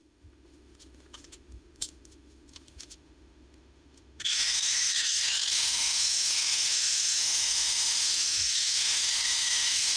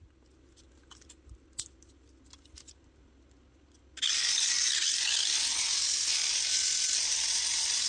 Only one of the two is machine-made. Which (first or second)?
first